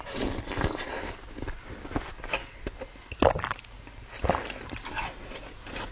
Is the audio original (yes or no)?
yes